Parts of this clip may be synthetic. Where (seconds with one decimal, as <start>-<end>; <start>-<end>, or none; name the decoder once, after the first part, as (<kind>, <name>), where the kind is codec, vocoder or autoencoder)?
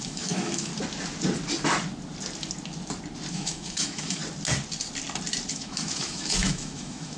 0.0-0.7 (autoencoder, DAC-VAE); 3.3-4.2; 5.5-7.2